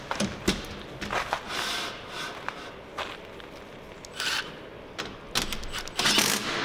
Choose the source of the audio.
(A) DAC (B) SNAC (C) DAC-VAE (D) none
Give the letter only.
D